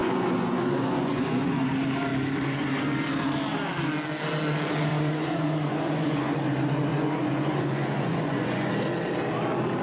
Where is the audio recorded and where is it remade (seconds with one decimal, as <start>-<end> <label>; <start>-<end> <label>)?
0.0-1.7 remade; 1.7-4.9 recorded; 4.9-6.4 remade; 6.4-6.9 recorded; 6.9-8.7 remade; 8.7-9.8 recorded